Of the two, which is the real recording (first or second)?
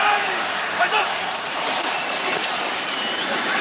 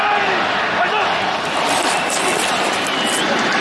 second